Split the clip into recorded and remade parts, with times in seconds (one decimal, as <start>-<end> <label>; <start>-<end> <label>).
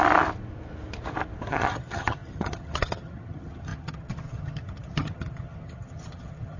0.0-1.5 recorded; 1.5-6.6 remade